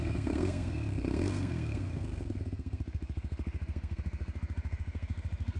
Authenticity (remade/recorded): remade